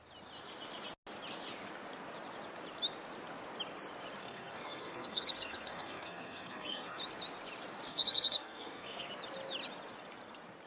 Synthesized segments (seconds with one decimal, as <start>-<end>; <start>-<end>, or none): 4.2-7.0; 7.9-9.1